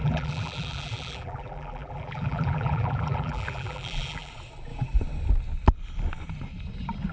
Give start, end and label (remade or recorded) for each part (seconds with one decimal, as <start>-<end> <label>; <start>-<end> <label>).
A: 0.0-4.3 remade; 4.3-7.1 recorded